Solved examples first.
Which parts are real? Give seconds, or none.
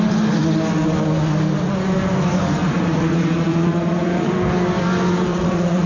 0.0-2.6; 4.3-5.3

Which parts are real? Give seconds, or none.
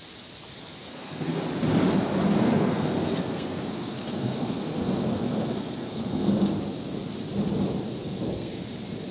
0.0-0.8; 1.4-2.4; 6.3-8.0; 8.6-9.1